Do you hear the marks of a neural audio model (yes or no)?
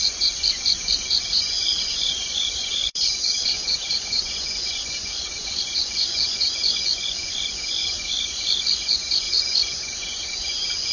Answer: yes